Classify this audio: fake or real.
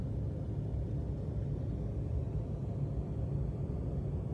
real